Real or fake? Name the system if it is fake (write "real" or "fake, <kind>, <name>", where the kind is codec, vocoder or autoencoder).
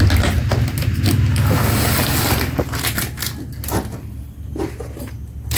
real